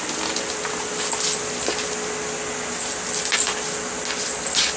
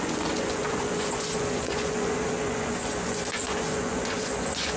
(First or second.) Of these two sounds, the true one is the first